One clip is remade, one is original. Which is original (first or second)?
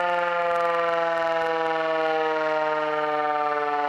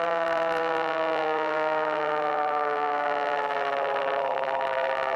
first